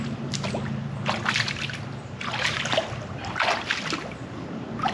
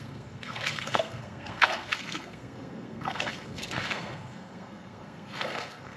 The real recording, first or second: first